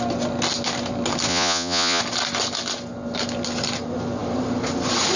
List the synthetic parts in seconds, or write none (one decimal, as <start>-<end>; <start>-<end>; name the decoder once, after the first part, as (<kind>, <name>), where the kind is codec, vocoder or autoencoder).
1.3-2.0 (vocoder, Vocos)

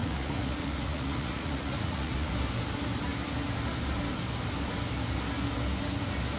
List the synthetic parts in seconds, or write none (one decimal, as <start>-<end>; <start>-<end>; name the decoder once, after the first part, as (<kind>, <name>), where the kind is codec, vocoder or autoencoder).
0.0-2.3 (vocoder, Vocos)

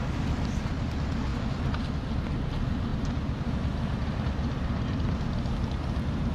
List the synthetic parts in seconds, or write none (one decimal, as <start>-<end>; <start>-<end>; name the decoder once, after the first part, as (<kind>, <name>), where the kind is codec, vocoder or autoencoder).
1.3-1.9 (vocoder, BigVGAN v2); 2.9-5.2

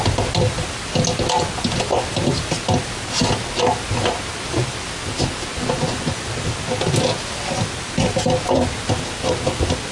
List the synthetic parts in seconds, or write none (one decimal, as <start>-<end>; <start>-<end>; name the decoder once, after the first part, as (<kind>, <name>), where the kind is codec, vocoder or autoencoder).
5.5-6.2 (vocoder, Vocos)

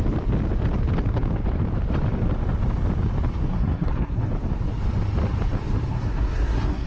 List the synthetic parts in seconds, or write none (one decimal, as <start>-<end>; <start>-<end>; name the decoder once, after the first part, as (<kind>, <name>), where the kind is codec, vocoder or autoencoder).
3.5-4.3 (codec, SNAC); 5.9-6.9

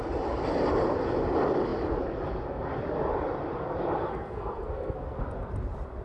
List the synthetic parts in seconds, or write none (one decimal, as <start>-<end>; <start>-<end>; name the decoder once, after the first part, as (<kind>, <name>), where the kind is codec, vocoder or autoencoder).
4.0-5.2 (codec, SNAC)

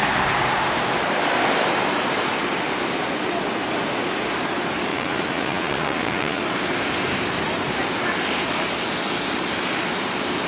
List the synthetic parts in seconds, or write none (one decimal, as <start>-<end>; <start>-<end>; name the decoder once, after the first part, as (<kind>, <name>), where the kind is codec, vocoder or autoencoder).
4.9-6.4 (vocoder, Vocos)

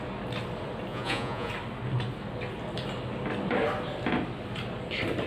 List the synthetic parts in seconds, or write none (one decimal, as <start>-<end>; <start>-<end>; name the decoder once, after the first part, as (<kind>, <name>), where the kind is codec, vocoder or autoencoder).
0.9-1.5 (vocoder, Vocos)